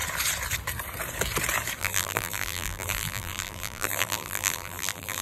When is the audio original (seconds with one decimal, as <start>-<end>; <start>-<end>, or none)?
0.0-1.8